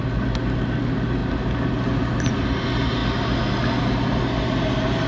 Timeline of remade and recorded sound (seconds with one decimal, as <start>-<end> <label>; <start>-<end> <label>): 0.0-5.1 recorded